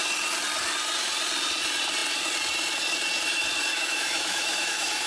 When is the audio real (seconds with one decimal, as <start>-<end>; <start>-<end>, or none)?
0.0-3.7